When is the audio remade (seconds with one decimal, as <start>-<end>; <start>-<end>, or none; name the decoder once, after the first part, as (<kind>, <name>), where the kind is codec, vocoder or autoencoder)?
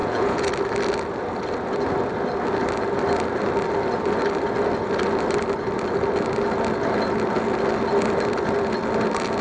0.0-0.5 (vocoder, Vocos)